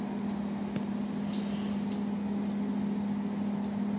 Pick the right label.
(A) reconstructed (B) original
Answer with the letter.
B